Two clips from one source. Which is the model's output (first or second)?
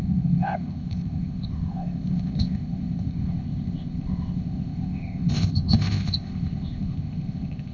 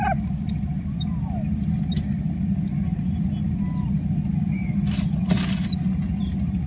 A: first